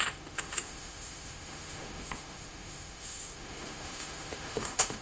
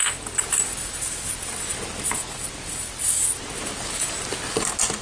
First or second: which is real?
second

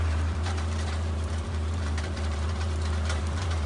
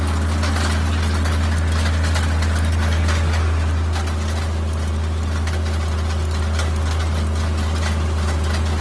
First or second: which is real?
second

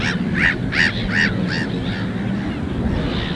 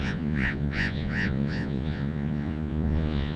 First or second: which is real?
first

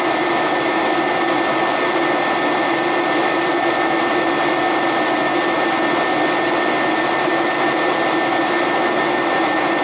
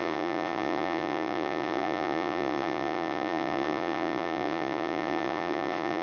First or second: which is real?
first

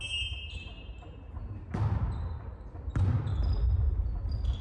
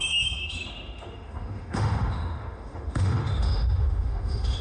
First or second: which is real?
first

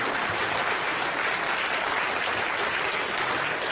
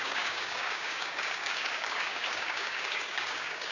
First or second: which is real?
first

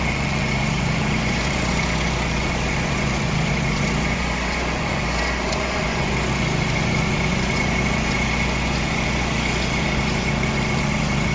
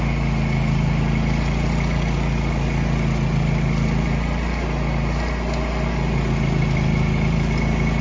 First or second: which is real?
second